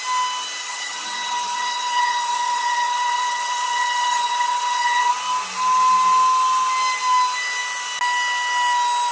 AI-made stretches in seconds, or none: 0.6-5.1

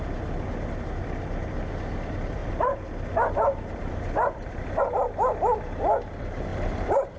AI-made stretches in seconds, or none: 2.4-4.8; 6.5-7.2